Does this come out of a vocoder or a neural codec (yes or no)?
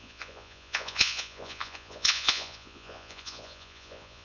yes